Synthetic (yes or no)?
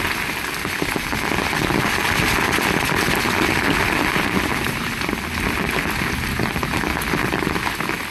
no